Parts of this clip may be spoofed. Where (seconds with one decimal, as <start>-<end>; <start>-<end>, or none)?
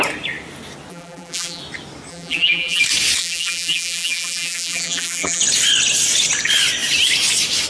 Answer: 0.9-1.6; 2.1-2.8; 3.2-5.4